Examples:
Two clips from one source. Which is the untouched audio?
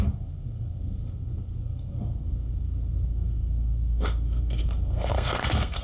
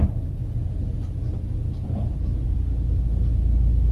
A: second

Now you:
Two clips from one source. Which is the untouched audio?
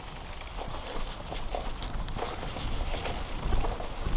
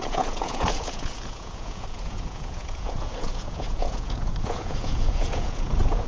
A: first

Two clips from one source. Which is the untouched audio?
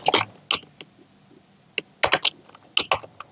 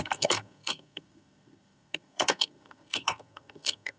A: first